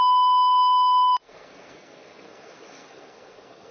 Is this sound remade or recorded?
remade